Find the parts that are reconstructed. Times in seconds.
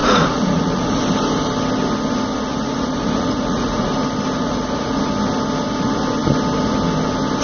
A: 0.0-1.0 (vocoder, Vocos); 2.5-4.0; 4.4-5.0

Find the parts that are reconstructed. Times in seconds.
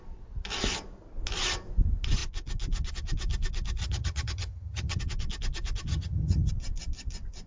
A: 3.8-5.0 (vocoder, HiFi-GAN); 5.9-6.5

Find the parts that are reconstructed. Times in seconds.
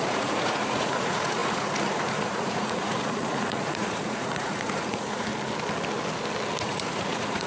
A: 0.0-5.3 (vocoder, Vocos); 6.6-7.5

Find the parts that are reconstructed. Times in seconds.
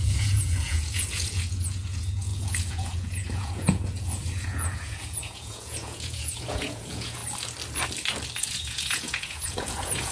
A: 0.0-7.2 (vocoder, Vocos); 8.4-10.1